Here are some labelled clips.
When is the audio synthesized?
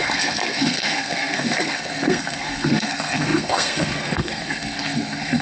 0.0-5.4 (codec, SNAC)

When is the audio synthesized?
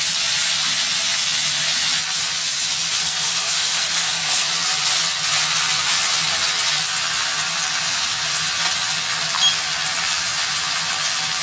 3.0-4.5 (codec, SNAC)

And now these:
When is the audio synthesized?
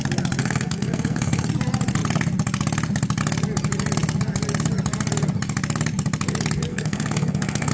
0.4-1.5 (codec, SNAC); 6.7-7.7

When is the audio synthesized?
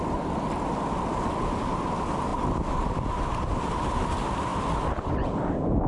none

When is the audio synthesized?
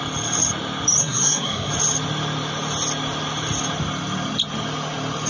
1.0-1.7 (codec, SNAC)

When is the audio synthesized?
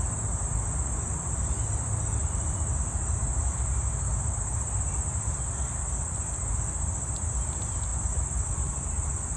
none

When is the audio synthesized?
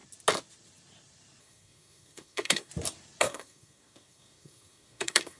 1.4-2.7 (codec, SNAC); 3.2-5.4